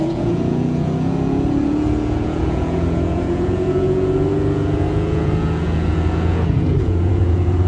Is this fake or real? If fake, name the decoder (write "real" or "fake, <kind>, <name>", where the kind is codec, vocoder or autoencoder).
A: fake, vocoder, Vocos